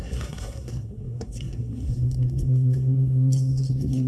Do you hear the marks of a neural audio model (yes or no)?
yes